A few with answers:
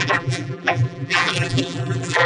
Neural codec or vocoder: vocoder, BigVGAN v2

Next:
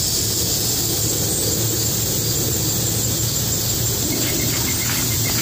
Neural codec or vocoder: none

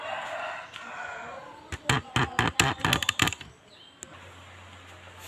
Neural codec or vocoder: none